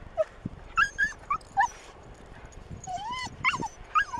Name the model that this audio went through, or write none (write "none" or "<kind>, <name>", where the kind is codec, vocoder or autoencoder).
vocoder, BigVGAN v2